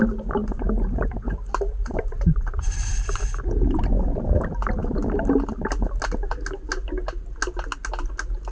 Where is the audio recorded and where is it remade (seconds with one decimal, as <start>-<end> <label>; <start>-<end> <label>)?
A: 0.0-0.4 recorded; 0.4-3.4 remade; 3.4-8.5 recorded